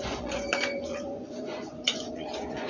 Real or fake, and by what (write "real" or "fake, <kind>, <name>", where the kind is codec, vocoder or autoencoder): fake, vocoder, Vocos